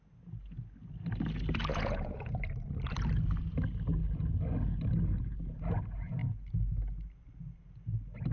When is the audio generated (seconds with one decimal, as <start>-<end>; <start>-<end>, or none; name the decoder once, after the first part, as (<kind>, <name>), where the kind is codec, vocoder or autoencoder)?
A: 1.7-2.4 (vocoder, Vocos)